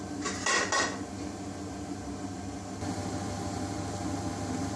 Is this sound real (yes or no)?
yes